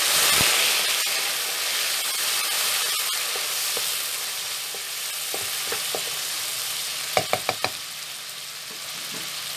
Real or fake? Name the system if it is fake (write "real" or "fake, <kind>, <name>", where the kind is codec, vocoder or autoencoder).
real